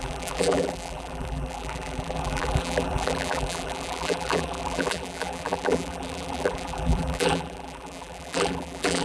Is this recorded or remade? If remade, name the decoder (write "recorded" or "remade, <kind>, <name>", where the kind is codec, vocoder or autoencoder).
remade, vocoder, BigVGAN v2